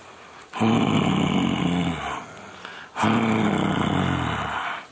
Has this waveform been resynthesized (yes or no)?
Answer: no